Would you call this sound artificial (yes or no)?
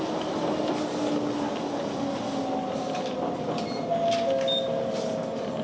no